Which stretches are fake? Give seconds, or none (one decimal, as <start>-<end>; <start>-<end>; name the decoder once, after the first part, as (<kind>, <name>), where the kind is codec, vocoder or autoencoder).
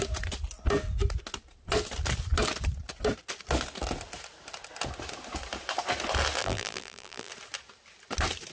6.4-7.3 (vocoder, BigVGAN v2)